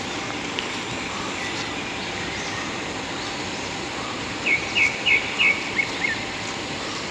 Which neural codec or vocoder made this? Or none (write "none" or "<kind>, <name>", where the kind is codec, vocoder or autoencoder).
none